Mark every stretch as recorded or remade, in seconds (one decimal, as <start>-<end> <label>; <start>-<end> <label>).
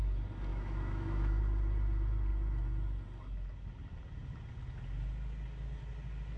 0.0-0.5 recorded; 0.5-1.4 remade; 1.4-6.4 recorded